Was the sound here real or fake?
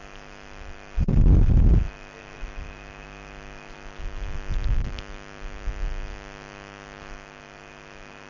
real